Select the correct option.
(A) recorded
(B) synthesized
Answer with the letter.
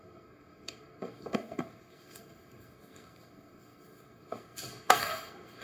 B